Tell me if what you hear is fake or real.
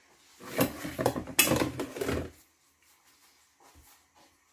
real